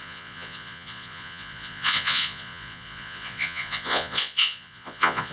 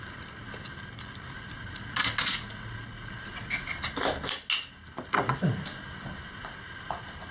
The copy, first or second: first